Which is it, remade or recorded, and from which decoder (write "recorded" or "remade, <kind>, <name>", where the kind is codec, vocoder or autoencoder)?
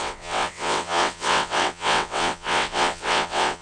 remade, vocoder, WaveNeXt